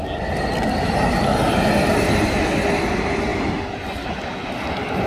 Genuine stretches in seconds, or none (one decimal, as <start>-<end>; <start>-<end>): 0.0-5.1